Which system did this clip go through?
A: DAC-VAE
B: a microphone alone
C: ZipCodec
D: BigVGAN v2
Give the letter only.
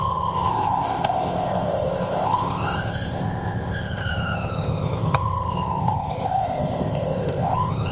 C